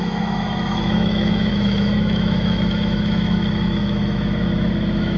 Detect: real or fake fake